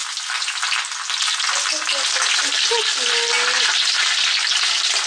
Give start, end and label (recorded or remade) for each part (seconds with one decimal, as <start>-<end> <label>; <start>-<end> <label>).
0.0-5.1 recorded